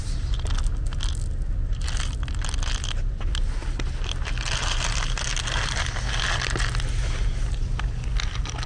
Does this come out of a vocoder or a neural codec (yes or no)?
no